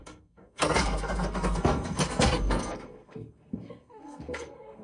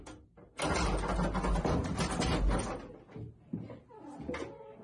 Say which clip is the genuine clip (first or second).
second